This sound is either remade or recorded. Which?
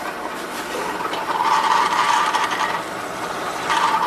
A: remade